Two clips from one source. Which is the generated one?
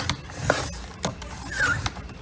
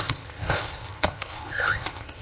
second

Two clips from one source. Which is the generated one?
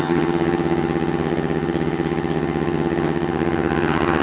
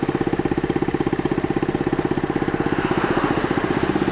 first